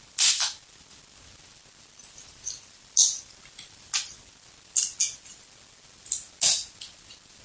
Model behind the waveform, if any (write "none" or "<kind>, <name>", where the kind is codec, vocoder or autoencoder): none